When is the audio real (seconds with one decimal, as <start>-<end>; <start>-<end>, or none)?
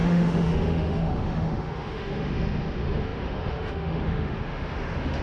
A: none